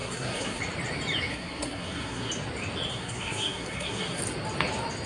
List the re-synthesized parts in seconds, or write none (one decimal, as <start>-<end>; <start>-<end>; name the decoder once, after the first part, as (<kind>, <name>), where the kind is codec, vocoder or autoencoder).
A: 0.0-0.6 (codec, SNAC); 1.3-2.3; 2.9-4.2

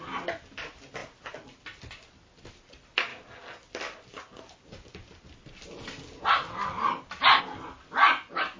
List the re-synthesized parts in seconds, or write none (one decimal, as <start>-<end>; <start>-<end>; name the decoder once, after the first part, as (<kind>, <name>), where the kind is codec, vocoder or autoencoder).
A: none

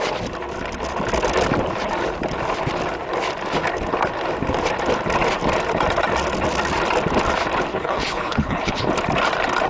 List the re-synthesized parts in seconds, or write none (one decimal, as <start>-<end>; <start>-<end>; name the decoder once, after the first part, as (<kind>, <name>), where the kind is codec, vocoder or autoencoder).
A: 7.7-8.9 (codec, HILCodec)

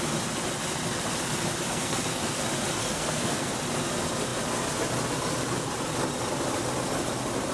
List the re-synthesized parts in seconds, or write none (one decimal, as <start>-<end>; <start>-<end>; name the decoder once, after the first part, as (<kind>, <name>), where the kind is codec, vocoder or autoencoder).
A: 1.7-2.4 (codec, SNAC); 2.8-3.5

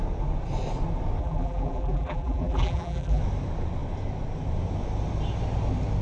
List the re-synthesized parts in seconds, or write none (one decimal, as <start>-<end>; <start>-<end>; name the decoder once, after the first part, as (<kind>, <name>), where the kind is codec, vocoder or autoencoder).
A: 1.2-3.2 (vocoder, BigVGAN v2)

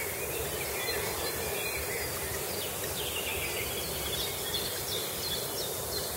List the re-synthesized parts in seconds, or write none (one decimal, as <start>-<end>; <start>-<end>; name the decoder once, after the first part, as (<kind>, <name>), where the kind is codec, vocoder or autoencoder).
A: none

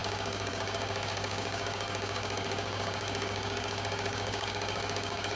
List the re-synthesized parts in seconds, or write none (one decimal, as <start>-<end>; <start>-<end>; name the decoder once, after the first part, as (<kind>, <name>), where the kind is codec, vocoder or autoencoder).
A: 0.0-5.4 (codec, DAC)

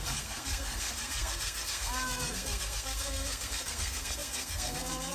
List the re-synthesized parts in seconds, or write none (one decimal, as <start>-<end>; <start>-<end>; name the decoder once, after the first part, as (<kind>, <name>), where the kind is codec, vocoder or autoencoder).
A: 0.0-5.1 (codec, SNAC)